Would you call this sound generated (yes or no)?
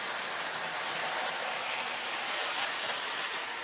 no